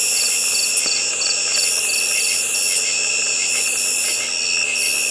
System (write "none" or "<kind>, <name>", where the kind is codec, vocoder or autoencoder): none